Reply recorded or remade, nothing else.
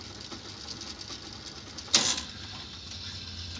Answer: recorded